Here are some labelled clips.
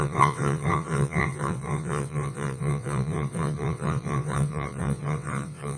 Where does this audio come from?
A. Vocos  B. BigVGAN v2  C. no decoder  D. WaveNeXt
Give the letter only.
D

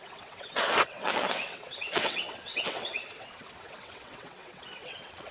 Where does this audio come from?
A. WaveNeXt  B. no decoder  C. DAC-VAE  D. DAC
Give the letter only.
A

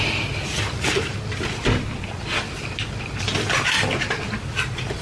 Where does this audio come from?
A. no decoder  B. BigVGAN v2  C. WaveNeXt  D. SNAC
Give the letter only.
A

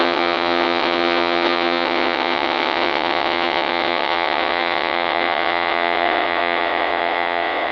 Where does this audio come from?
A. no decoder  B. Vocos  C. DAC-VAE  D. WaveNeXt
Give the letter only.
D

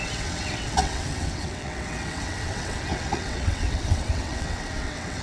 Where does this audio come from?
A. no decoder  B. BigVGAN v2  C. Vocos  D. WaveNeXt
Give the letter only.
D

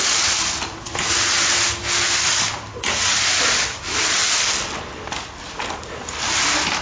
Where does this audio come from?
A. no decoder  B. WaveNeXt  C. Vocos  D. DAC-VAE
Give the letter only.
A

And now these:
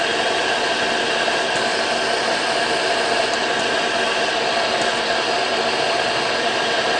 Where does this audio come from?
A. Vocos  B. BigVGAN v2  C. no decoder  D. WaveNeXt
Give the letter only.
C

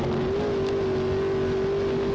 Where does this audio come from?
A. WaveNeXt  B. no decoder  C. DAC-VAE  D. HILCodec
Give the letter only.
B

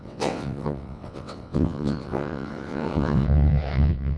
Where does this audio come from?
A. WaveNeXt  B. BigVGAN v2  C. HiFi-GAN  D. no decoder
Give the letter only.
A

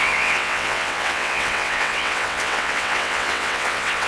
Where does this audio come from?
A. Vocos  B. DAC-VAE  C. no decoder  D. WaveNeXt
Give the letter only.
D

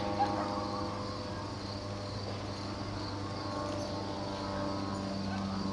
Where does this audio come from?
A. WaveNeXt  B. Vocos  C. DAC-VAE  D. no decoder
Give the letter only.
D